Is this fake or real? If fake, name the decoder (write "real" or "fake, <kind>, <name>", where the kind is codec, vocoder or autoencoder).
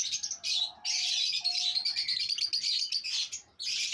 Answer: real